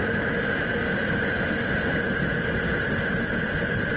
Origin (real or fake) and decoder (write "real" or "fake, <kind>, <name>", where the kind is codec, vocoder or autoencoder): real